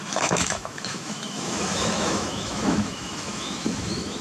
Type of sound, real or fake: fake